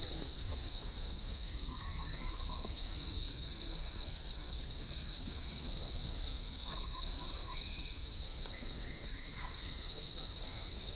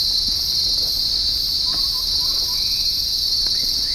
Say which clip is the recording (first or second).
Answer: second